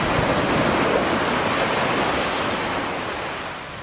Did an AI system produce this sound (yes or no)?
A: no